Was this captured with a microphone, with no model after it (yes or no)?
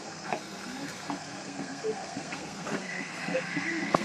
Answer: no